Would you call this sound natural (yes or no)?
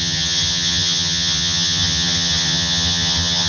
no